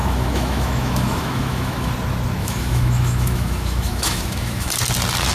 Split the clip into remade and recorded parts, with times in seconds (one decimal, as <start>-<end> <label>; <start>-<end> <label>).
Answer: 0.0-1.9 remade; 1.9-2.4 recorded; 2.4-4.7 remade; 4.7-5.3 recorded